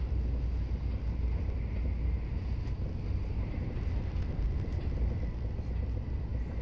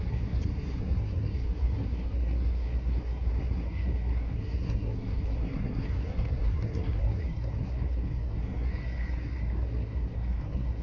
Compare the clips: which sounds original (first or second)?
first